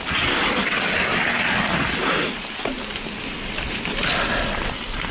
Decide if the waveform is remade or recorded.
recorded